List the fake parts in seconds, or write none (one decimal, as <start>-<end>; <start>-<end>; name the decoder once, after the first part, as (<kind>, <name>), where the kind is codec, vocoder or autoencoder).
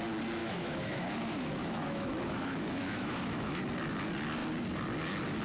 0.4-3.6 (autoencoder, DAC-VAE)